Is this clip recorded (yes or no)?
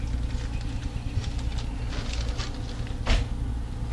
yes